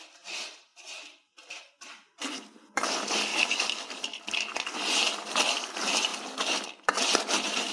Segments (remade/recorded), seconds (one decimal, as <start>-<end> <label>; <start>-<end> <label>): 0.0-3.3 recorded; 3.3-3.9 remade; 3.9-7.7 recorded